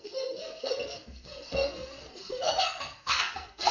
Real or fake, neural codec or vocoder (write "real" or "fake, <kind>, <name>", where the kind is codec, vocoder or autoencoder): fake, codec, SNAC